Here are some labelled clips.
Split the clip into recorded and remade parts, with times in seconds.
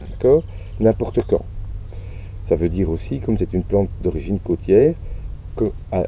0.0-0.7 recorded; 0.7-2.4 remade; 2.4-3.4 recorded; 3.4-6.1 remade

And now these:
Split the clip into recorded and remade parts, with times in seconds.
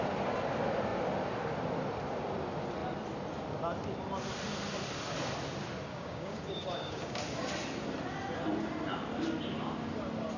0.0-5.9 recorded; 5.9-7.2 remade; 7.2-10.4 recorded